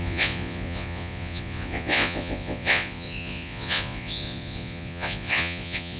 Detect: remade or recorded remade